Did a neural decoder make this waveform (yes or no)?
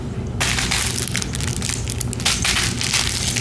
no